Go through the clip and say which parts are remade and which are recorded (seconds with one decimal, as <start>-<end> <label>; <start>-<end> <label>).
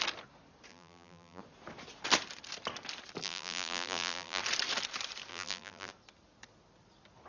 0.0-0.7 recorded; 0.7-1.4 remade; 1.4-3.2 recorded; 3.2-4.4 remade; 4.4-5.3 recorded; 5.3-5.9 remade; 5.9-7.3 recorded